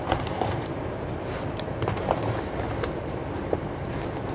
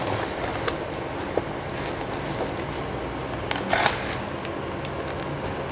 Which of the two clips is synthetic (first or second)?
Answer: first